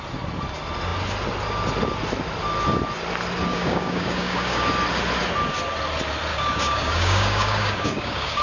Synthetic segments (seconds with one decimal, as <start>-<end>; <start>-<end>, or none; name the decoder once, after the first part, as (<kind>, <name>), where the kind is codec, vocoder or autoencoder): 3.5-4.6 (codec, DAC); 6.3-8.4